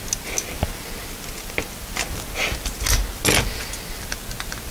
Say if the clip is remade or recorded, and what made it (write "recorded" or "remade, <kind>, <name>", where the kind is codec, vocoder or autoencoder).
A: recorded